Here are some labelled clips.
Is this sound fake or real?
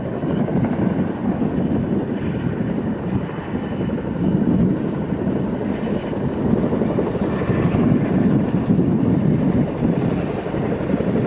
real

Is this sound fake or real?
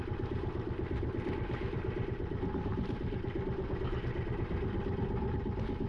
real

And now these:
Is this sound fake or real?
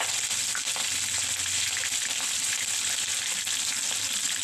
real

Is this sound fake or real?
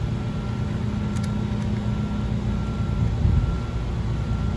real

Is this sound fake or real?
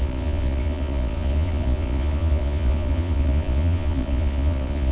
fake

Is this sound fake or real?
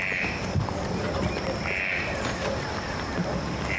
real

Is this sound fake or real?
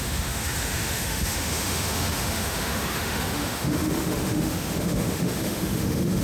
fake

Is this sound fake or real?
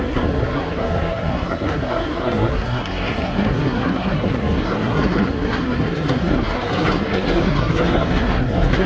fake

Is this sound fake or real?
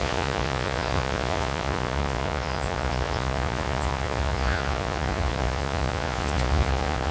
fake